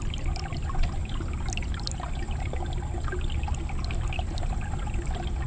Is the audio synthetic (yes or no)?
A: no